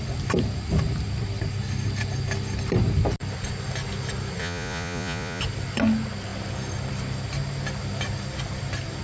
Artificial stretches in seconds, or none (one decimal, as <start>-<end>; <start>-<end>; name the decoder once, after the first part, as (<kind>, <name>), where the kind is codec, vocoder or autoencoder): 4.4-5.4 (vocoder, Vocos)